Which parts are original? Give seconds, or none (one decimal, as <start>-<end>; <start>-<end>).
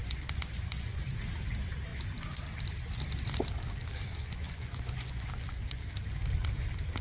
1.1-4.2; 5.8-7.0